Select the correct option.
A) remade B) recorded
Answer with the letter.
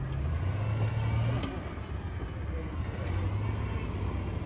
B